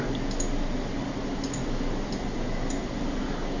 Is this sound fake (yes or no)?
no